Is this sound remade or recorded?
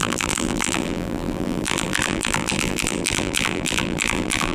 remade